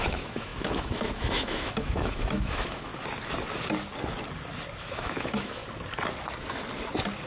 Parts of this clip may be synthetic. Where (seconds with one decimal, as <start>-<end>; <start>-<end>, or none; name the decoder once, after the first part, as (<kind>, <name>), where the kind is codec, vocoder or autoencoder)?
0.0-2.9 (autoencoder, DAC-VAE); 4.8-5.6